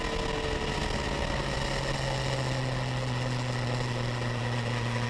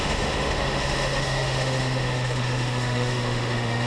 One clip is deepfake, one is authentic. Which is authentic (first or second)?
first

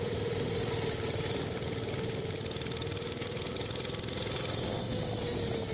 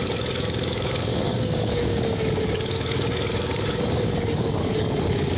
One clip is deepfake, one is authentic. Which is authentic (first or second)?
first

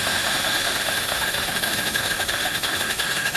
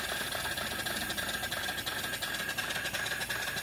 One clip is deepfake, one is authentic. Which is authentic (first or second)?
second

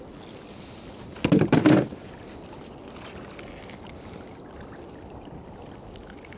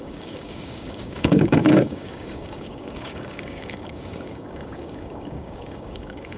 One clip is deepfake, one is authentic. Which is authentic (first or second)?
first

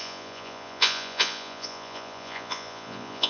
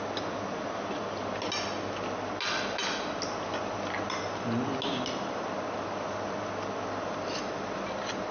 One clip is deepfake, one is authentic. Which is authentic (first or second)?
second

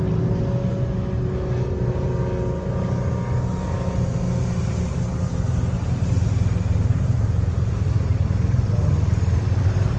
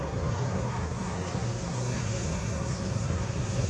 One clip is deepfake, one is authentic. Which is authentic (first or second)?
first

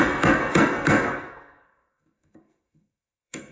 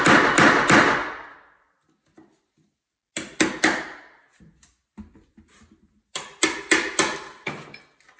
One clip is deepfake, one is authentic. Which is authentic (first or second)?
second